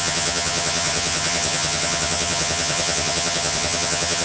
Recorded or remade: remade